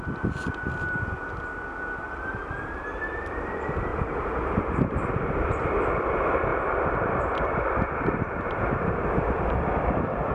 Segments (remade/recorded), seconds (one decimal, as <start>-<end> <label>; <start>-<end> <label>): 0.0-10.3 remade